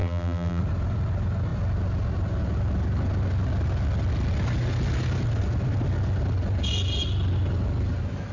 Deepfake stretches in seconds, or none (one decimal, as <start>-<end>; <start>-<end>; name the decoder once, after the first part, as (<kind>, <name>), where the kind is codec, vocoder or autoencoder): 0.0-0.6 (vocoder, BigVGAN v2)